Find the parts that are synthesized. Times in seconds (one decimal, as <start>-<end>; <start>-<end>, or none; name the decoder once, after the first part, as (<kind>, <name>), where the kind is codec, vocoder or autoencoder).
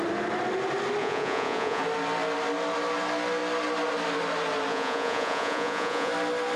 1.0-1.8 (vocoder, Vocos); 4.7-6.1